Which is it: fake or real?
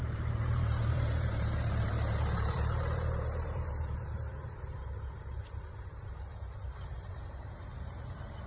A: fake